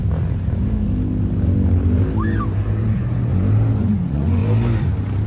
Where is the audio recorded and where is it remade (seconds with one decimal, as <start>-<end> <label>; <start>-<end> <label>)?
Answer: 0.0-2.8 recorded; 2.8-3.3 remade; 3.3-3.8 recorded; 3.8-4.4 remade; 4.4-5.3 recorded

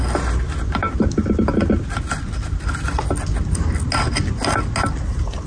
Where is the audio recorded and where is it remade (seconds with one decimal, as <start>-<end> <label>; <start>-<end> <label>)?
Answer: 0.0-5.5 recorded

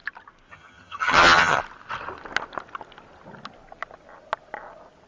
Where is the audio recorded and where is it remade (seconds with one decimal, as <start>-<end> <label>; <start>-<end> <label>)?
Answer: 0.0-0.5 recorded; 0.5-1.6 remade; 1.6-5.1 recorded

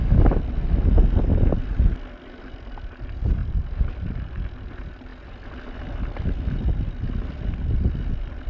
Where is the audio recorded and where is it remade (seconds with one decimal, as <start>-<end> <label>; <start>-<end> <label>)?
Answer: 0.0-8.5 recorded